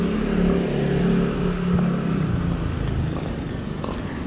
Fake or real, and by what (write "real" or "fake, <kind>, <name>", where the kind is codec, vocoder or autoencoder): real